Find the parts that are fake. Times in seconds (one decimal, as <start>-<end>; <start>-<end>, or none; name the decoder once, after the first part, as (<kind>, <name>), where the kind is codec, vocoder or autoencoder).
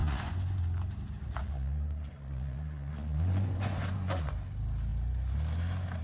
0.0-0.6 (vocoder, Vocos); 1.4-4.3